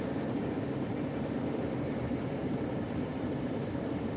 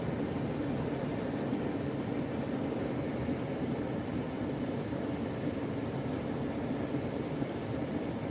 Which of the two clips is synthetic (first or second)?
first